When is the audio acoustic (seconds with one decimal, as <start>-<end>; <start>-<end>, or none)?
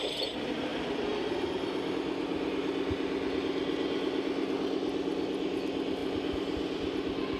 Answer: 0.0-0.7; 1.9-6.0